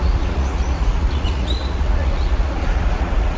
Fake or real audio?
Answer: fake